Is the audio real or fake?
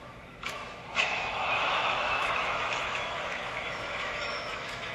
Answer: fake